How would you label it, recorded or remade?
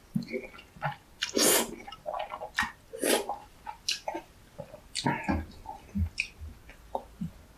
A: recorded